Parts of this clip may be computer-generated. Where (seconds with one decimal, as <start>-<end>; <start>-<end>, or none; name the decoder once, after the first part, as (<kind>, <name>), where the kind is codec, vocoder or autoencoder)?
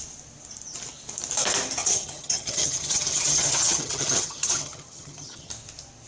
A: 1.8-5.5 (vocoder, HiFi-GAN)